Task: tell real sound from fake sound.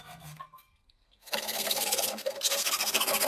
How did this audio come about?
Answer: fake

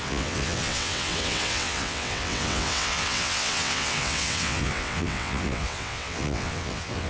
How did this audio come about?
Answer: fake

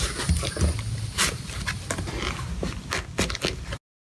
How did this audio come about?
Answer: real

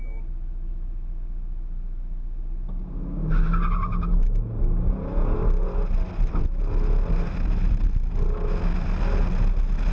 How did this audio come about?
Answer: real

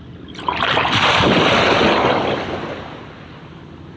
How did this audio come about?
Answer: real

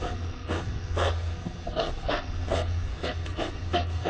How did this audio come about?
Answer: fake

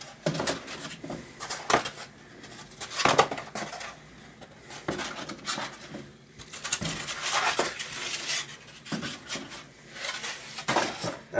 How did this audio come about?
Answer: real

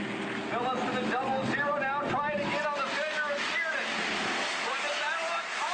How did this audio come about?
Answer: real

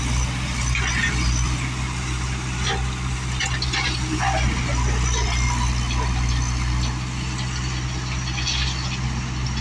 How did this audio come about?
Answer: real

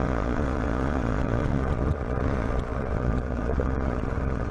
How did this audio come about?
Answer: fake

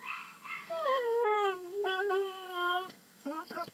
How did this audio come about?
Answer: fake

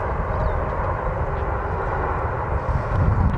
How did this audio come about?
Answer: real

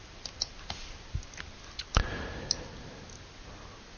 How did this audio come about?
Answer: real